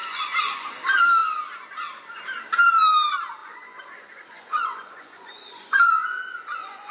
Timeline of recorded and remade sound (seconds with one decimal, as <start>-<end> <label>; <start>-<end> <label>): 0.0-0.7 remade; 0.7-3.4 recorded; 3.4-6.9 remade